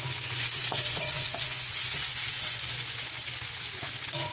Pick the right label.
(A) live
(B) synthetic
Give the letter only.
B